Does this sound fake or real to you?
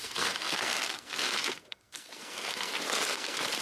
fake